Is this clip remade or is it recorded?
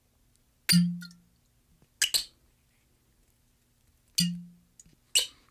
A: recorded